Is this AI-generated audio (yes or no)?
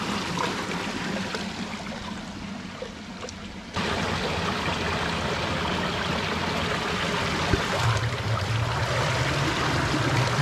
no